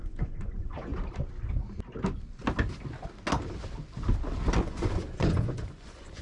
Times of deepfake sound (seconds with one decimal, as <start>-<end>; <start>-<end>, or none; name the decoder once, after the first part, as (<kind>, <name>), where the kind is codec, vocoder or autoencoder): 0.0-0.9 (vocoder, Vocos); 4.6-6.2